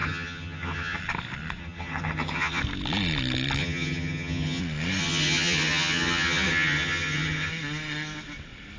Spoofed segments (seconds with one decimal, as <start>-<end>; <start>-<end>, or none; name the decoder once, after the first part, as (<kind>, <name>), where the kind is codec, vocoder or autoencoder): 0.0-1.0 (vocoder, HiFi-GAN); 1.6-2.6; 3.6-4.6; 5.0-7.5